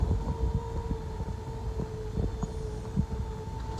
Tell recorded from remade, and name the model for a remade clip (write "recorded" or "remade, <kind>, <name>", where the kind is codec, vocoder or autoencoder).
recorded